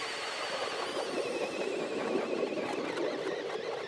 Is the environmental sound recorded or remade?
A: recorded